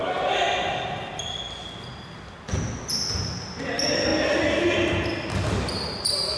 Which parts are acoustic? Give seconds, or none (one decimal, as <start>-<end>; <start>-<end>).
0.0-6.4